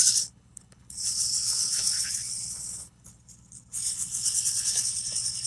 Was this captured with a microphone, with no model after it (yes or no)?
no